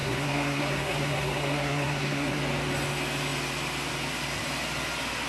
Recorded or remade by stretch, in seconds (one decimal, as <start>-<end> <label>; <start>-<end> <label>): 0.0-2.4 remade; 2.4-5.3 recorded